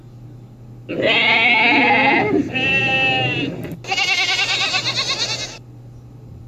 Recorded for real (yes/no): yes